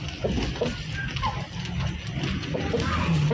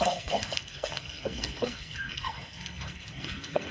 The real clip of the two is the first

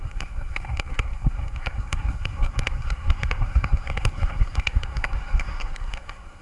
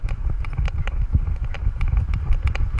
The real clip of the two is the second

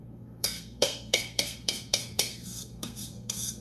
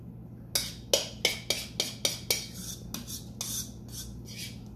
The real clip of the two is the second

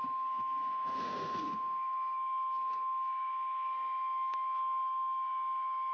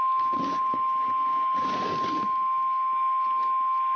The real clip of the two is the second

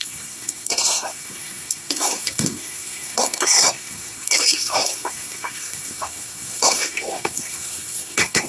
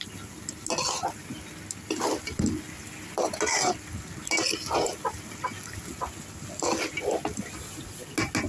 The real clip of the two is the second